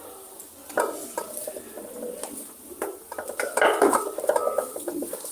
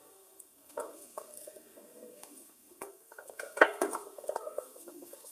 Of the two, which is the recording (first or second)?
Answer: first